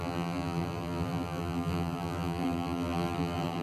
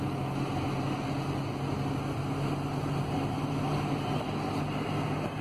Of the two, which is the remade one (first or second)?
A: first